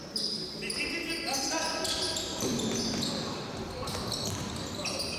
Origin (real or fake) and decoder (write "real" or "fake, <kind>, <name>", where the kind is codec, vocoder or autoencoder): real